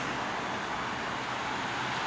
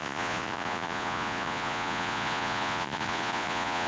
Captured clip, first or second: first